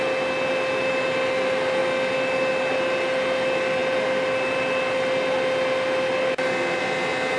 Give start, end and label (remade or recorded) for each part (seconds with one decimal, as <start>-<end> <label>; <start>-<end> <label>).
0.0-7.4 recorded